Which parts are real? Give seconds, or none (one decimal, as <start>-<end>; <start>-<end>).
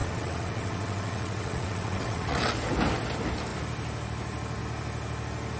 2.4-5.6